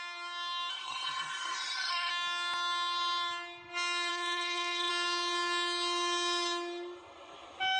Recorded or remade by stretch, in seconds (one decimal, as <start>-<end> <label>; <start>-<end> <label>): 0.0-0.7 recorded; 0.7-2.1 remade; 2.1-4.1 recorded; 4.1-4.9 remade; 4.9-7.8 recorded